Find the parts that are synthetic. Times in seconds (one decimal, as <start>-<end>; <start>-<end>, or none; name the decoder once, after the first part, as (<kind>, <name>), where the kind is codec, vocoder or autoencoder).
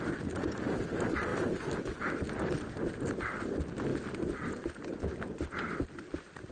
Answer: none